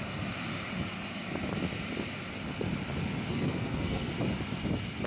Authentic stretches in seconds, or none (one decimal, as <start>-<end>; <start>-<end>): 0.0-3.3; 4.1-5.1